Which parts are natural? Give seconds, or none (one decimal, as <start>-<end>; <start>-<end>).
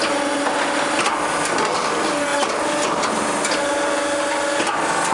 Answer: 0.0-5.1